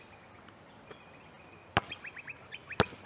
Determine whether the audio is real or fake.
real